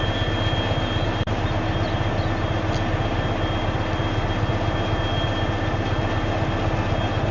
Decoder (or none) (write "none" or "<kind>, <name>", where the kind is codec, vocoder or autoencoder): none